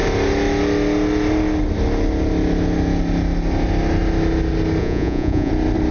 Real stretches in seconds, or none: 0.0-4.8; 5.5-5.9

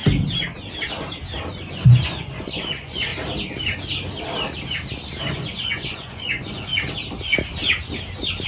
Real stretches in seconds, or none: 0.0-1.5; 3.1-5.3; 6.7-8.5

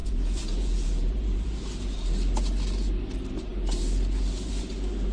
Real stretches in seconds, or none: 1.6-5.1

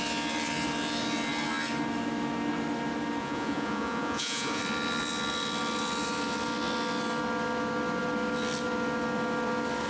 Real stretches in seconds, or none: 0.0-3.2; 4.6-9.9

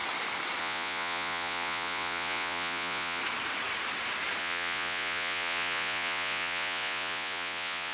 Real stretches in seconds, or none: 0.0-0.6; 3.2-4.4

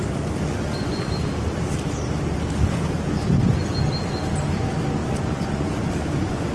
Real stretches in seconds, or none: 0.0-0.5; 1.1-5.0

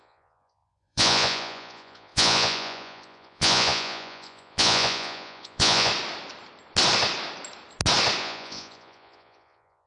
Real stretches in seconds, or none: 5.9-8.2